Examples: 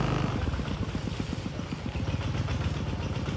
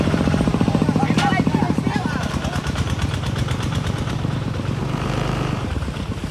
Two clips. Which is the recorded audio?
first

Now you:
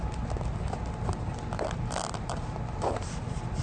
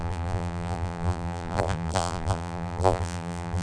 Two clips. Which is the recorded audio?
first